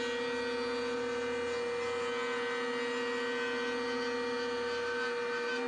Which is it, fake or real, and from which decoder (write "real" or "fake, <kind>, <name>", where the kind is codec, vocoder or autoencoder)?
real